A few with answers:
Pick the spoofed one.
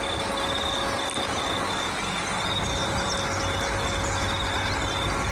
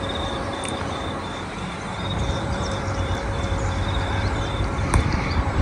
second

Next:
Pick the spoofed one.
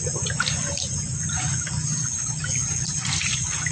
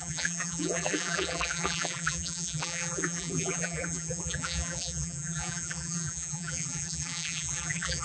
second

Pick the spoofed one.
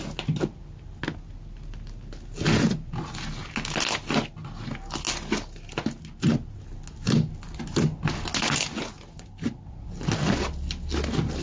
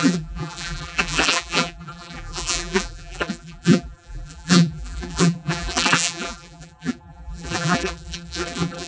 second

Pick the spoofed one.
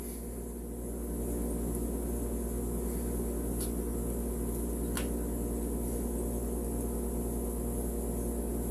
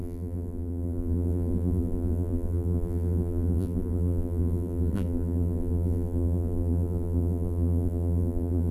second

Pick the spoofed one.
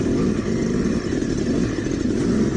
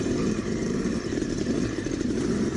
second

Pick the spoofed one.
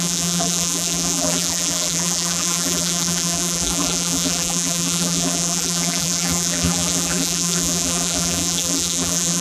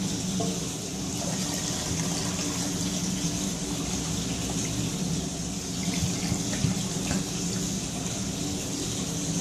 first